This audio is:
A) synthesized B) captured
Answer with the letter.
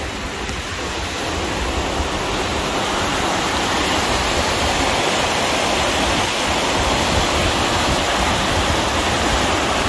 B